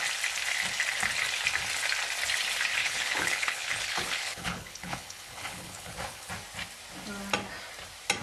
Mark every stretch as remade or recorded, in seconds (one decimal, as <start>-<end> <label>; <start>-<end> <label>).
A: 0.0-2.8 recorded; 2.8-6.3 remade; 6.3-8.2 recorded